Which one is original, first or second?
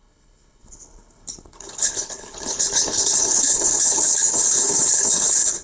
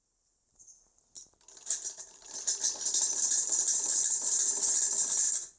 second